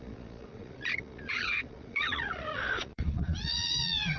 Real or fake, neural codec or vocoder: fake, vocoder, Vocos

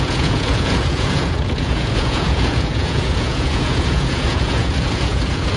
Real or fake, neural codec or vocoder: fake, vocoder, Vocos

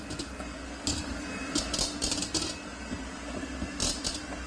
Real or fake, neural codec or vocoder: real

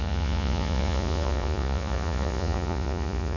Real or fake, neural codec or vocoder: fake, vocoder, Vocos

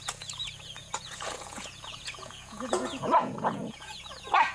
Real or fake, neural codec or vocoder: fake, vocoder, Vocos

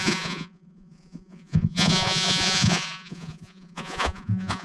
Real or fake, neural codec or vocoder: fake, vocoder, Vocos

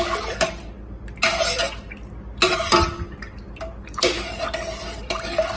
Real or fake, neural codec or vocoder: real